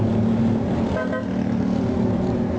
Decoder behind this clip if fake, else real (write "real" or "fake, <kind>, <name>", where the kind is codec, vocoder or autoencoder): real